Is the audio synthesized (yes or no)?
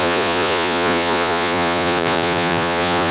yes